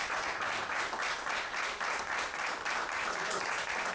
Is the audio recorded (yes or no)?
yes